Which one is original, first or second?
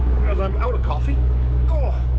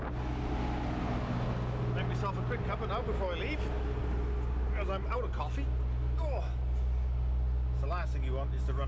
second